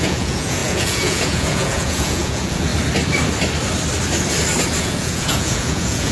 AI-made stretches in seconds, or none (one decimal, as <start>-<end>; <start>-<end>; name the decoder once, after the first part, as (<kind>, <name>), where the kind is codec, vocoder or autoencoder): 0.0-2.7 (vocoder, Vocos); 4.8-6.1